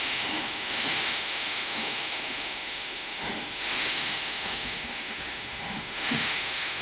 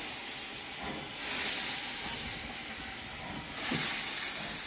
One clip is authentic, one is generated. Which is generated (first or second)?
first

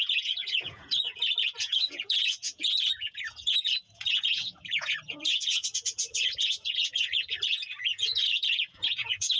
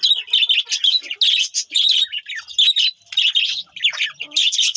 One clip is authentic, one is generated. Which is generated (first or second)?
first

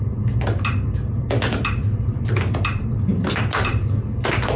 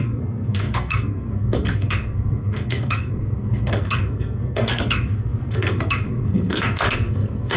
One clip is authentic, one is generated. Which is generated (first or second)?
second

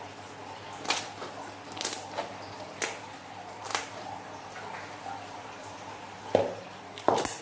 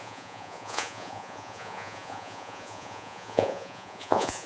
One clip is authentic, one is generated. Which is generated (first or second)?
second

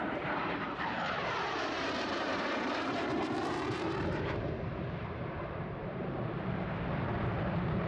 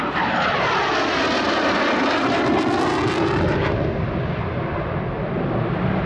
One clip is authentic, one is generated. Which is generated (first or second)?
first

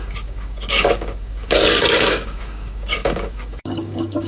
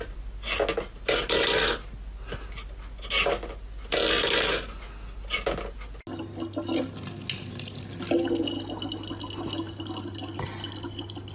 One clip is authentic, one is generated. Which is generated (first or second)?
first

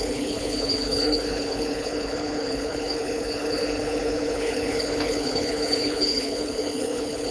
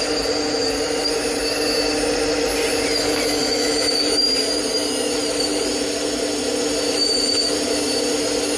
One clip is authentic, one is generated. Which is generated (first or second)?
first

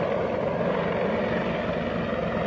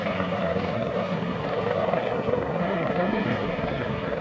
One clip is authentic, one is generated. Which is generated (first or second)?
second